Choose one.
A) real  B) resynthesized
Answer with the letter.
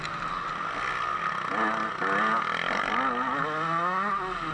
A